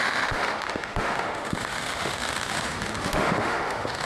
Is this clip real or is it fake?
fake